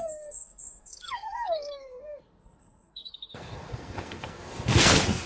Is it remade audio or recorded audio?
remade